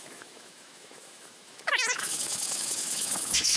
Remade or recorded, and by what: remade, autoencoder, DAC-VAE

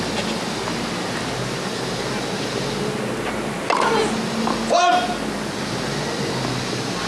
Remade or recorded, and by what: recorded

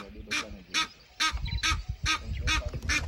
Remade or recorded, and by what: recorded